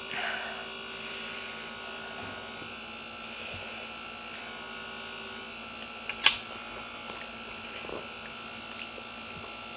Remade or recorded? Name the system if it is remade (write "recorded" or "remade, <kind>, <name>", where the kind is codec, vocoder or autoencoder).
recorded